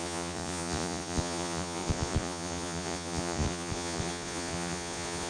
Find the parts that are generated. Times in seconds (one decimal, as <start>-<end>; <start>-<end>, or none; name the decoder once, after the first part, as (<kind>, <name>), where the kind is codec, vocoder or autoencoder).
0.0-5.3 (vocoder, Vocos)